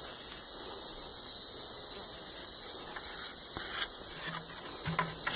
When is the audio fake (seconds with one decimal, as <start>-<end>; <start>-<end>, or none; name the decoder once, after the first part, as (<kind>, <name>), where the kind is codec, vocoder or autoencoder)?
none